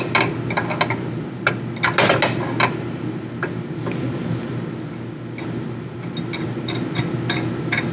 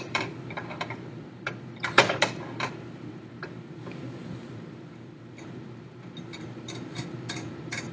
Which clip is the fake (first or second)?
second